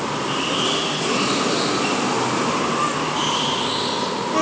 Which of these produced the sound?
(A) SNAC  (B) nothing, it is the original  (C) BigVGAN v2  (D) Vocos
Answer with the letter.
B